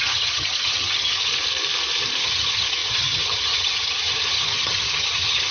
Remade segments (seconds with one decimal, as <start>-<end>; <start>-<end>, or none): 0.0-1.3; 2.2-5.5